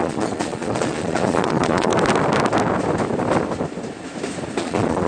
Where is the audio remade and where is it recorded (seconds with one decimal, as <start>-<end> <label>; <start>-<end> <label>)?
0.0-1.9 remade; 1.9-4.6 recorded; 4.6-5.1 remade